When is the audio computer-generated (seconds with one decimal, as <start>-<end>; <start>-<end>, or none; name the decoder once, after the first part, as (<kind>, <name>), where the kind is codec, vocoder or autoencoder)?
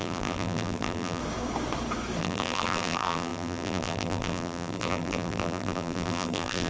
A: 0.0-1.2 (vocoder, BigVGAN v2); 2.2-6.7